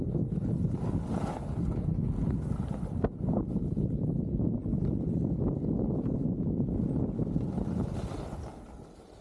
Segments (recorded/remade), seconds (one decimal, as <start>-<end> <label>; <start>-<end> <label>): 0.0-9.2 recorded